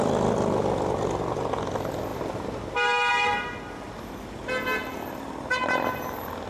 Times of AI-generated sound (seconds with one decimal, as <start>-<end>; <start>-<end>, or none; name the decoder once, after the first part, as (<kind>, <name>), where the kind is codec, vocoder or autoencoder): none